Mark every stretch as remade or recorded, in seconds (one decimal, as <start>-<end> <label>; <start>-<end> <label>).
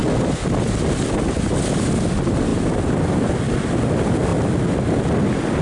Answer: 0.0-5.6 recorded